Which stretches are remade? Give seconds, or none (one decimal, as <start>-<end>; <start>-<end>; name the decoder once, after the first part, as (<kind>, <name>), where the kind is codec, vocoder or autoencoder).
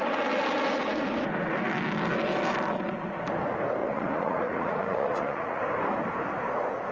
3.8-5.6 (vocoder, Vocos)